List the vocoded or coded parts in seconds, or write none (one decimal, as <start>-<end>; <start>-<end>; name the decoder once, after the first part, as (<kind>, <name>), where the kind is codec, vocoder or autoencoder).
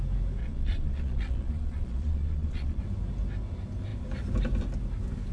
0.4-2.8 (vocoder, Vocos)